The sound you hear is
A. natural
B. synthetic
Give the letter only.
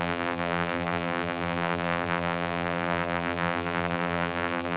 B